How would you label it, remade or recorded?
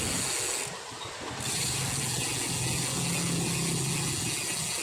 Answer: recorded